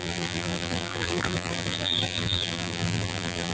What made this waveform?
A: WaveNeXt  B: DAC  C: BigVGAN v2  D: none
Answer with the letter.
C